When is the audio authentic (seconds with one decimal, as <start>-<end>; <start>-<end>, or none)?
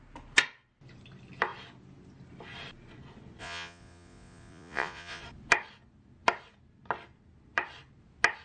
0.0-3.4; 5.2-8.4